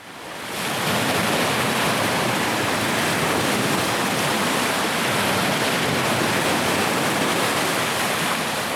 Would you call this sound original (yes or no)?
no